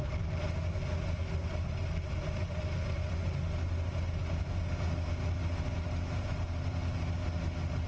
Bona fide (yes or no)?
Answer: yes